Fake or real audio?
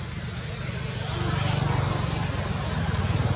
real